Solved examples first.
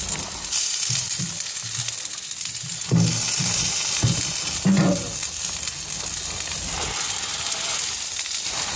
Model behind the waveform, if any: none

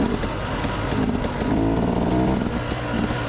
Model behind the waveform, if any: none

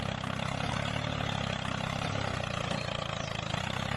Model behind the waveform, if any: none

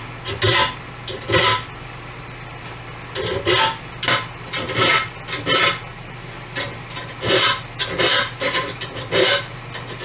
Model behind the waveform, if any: none